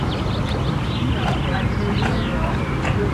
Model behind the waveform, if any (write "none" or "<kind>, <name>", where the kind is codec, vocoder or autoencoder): none